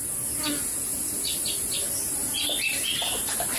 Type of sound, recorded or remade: recorded